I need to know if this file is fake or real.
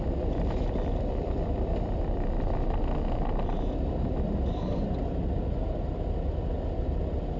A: real